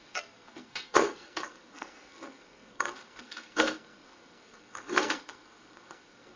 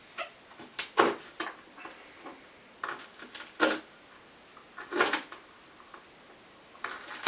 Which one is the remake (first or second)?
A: first